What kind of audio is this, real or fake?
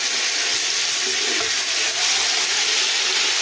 real